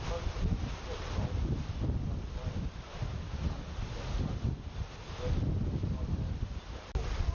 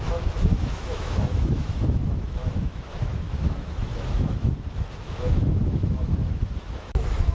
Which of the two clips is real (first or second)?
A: first